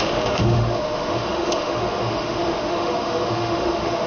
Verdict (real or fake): fake